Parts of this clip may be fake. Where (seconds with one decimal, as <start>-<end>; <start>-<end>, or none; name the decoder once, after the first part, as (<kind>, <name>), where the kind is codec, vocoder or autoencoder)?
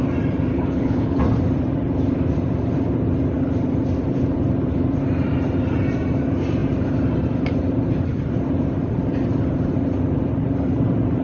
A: 0.5-1.2 (codec, HILCodec)